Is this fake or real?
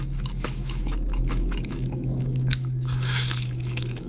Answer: fake